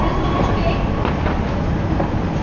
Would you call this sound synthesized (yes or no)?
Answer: no